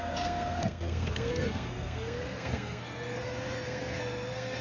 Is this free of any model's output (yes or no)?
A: no